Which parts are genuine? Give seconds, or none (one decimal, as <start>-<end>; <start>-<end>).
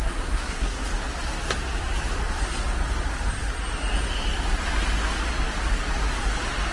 0.8-6.7